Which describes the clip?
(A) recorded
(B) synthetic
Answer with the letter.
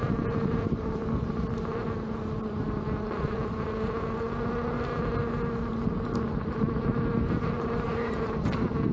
A